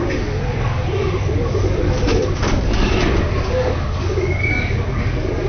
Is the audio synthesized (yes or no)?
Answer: yes